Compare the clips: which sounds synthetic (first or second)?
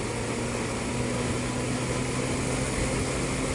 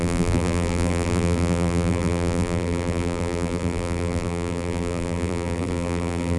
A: second